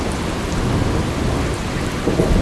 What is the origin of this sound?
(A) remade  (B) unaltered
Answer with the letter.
B